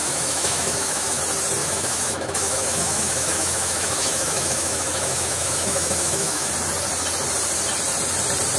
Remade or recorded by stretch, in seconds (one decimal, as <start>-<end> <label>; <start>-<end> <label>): 0.0-1.2 remade; 1.2-1.6 recorded; 1.6-6.5 remade; 6.5-8.6 recorded